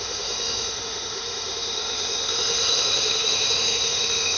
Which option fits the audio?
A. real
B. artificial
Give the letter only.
B